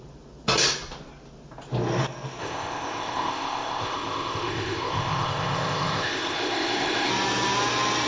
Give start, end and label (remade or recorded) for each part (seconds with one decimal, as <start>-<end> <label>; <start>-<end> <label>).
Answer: 0.0-2.4 recorded; 2.4-7.1 remade; 7.1-8.1 recorded